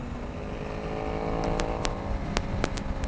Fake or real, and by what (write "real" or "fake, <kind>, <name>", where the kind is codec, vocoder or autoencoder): real